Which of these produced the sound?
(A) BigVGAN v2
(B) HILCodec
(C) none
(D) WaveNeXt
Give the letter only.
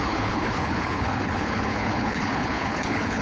B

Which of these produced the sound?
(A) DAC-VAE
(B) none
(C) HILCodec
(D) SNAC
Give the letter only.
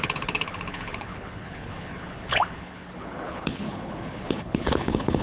C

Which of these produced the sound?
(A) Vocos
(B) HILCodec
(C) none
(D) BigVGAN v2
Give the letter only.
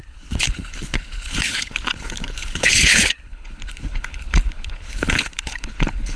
B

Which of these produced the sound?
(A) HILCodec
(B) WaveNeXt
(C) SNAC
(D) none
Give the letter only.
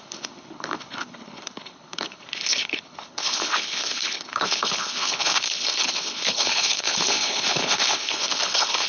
A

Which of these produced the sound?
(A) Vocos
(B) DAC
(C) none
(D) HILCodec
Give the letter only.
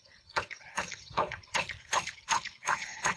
D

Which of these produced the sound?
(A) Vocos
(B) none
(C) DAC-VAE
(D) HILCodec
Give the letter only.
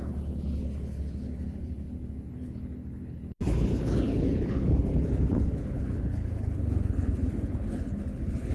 D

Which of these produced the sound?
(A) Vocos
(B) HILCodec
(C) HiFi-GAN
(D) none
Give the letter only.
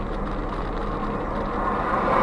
D